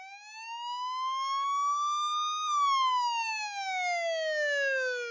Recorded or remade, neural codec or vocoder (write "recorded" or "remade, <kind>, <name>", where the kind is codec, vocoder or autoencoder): recorded